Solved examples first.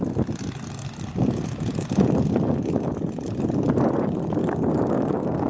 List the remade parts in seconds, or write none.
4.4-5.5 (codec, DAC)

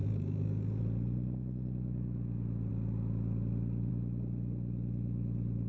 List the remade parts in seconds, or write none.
0.0-0.8 (codec, DAC)

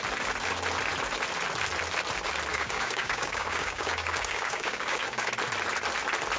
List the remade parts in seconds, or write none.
2.5-5.3 (codec, DAC)

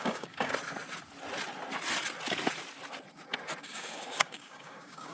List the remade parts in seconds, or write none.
0.0-0.5 (codec, DAC); 3.6-5.1

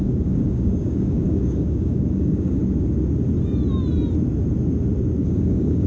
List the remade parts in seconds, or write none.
0.0-2.6 (codec, DAC); 5.2-5.9

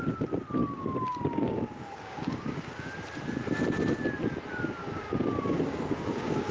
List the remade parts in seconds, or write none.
0.6-2.9 (codec, DAC); 4.8-6.5

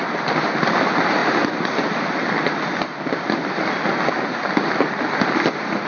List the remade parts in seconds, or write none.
none